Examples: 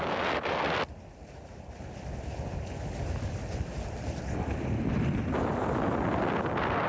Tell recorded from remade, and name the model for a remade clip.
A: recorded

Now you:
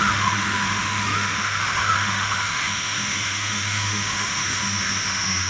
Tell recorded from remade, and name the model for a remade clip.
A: remade, autoencoder, DAC-VAE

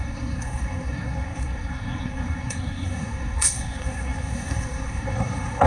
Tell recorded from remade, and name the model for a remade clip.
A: remade, codec, SNAC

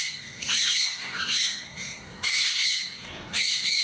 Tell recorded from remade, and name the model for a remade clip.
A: remade, codec, SNAC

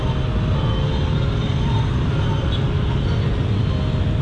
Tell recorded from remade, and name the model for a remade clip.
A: recorded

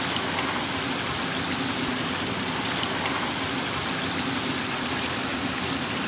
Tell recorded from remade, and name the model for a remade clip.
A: recorded